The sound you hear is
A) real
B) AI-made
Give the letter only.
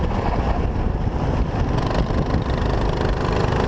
A